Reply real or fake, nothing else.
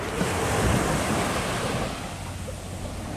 real